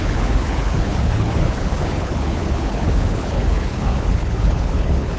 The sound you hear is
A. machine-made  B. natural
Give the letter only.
A